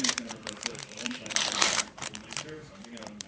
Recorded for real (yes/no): no